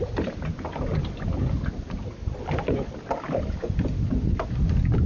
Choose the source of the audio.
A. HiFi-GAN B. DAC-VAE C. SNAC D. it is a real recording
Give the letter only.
D